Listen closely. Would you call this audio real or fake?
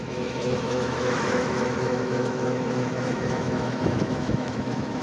fake